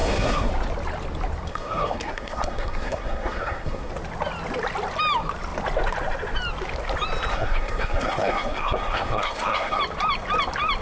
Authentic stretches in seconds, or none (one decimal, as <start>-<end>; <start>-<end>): 0.5-1.5; 3.9-7.3; 9.8-10.8